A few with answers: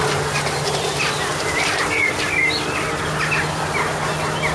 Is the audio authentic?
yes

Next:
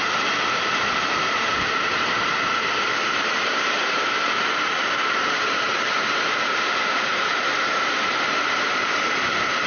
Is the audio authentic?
no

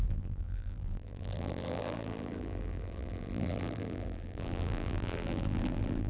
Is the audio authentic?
no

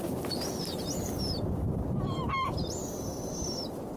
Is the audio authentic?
no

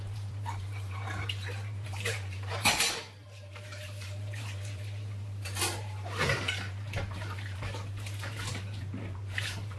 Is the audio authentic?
no